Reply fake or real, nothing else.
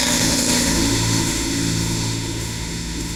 fake